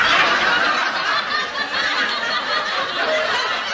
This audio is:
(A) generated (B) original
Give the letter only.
B